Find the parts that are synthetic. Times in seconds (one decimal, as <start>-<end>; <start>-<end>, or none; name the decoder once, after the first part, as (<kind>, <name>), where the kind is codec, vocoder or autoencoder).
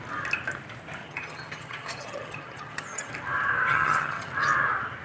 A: 1.0-3.1 (vocoder, HiFi-GAN); 3.7-4.3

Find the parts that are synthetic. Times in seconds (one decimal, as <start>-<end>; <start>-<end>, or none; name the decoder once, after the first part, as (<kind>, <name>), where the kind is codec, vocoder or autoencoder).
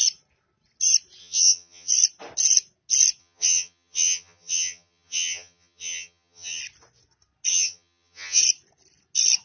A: 1.2-1.9 (vocoder, HiFi-GAN); 3.2-6.6; 7.5-8.4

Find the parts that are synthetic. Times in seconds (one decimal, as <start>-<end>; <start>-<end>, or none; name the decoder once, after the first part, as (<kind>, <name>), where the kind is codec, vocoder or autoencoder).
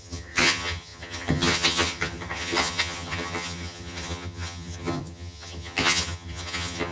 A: 0.0-6.9 (vocoder, HiFi-GAN)